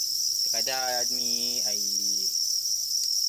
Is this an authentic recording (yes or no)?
yes